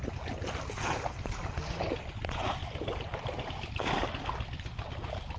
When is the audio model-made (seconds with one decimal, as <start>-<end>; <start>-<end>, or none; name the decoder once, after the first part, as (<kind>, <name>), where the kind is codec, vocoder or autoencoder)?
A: 2.6-3.5 (vocoder, BigVGAN v2)